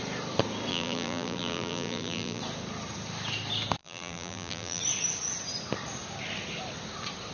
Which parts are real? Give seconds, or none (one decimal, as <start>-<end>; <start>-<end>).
0.0-0.7; 2.4-3.8; 4.8-7.3